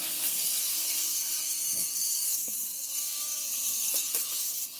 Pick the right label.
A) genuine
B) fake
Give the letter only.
B